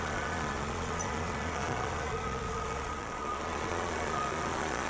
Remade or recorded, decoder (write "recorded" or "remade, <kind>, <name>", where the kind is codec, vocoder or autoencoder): remade, vocoder, Vocos